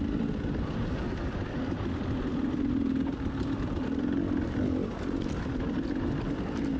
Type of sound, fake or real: real